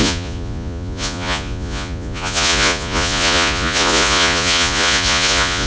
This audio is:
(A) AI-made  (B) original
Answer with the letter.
A